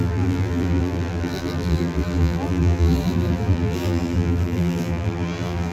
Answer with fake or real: fake